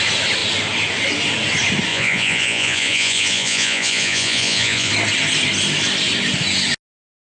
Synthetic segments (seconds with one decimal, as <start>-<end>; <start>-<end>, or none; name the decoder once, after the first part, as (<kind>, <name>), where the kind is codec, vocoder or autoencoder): 1.9-4.9 (vocoder, Vocos)